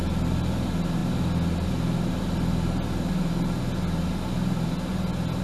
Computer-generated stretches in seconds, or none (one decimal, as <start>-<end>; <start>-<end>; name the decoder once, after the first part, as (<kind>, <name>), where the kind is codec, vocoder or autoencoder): none